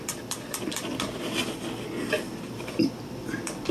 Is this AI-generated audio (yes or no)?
no